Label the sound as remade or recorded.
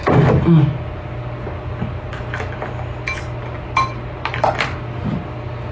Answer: recorded